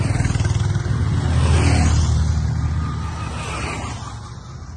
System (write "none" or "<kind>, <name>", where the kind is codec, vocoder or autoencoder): none